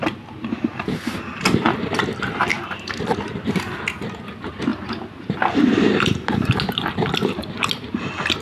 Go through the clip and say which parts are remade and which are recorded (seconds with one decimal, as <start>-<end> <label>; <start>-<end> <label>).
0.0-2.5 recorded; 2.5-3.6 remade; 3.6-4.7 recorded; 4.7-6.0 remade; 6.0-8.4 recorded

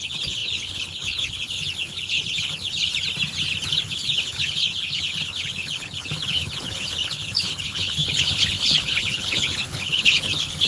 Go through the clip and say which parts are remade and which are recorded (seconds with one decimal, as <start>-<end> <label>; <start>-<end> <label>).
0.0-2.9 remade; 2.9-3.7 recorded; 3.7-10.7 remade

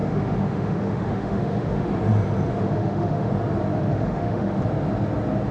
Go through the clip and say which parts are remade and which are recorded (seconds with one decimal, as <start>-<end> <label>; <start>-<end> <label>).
0.0-1.9 remade; 1.9-2.5 recorded; 2.5-3.3 remade; 3.3-3.7 recorded; 3.7-4.6 remade; 4.6-5.5 recorded